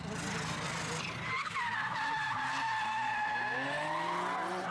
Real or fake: real